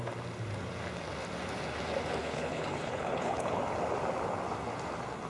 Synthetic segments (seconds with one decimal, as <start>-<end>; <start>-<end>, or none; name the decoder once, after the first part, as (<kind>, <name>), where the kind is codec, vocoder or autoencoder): 2.2-3.6 (codec, HILCodec)